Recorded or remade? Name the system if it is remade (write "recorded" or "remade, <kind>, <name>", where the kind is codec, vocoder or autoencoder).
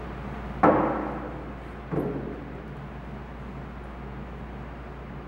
recorded